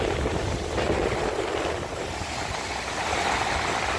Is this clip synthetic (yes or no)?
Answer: no